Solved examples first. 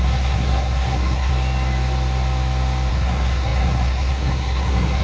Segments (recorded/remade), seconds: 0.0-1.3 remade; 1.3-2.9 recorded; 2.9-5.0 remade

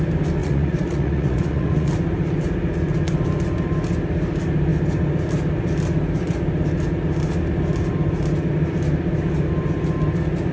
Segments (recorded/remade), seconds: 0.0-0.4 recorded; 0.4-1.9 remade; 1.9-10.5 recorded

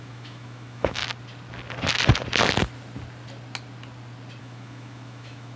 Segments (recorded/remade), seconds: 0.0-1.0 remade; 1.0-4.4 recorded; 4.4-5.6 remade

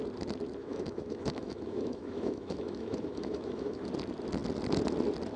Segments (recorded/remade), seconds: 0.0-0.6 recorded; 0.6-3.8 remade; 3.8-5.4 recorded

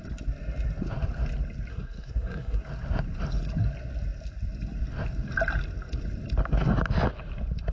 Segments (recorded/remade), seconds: 0.0-1.7 recorded; 1.7-2.6 remade; 2.6-7.7 recorded